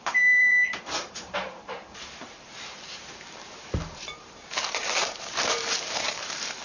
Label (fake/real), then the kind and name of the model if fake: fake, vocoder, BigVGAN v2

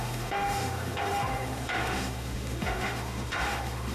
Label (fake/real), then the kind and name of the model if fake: fake, autoencoder, DAC-VAE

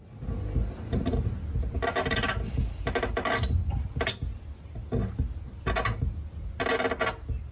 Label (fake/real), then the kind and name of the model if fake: real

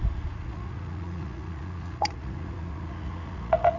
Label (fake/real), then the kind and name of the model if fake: fake, vocoder, Vocos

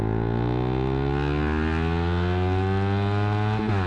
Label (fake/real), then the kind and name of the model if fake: real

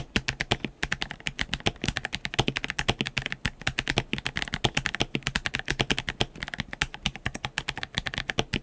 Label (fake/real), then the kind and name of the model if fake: real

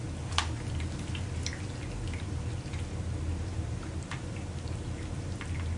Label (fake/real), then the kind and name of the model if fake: real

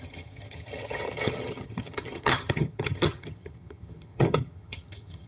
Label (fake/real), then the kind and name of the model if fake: fake, vocoder, HiFi-GAN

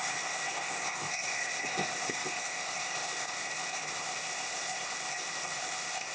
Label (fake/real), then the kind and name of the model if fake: fake, codec, ZipCodec